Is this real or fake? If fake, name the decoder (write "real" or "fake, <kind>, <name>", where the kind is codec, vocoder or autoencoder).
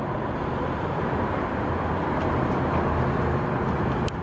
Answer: real